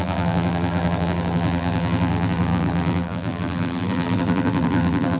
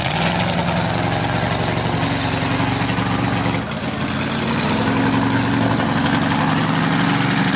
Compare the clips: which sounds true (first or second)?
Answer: second